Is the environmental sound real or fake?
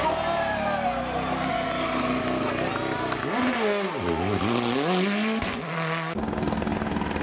real